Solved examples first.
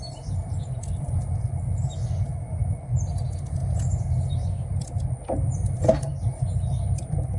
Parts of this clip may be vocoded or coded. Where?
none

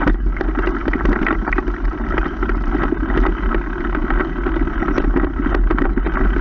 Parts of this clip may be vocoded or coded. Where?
0.8-2.7 (vocoder, BigVGAN v2)

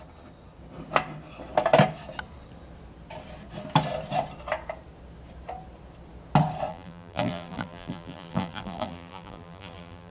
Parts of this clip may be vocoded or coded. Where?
6.7-10.1 (vocoder, BigVGAN v2)